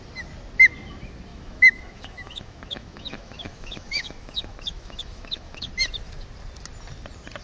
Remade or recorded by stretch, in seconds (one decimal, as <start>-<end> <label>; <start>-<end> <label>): 0.0-1.3 recorded; 1.3-5.7 remade; 5.7-7.4 recorded